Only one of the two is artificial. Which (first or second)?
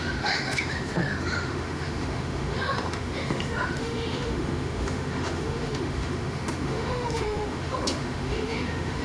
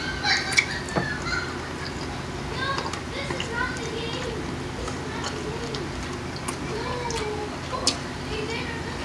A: first